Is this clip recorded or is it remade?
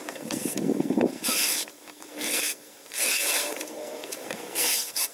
remade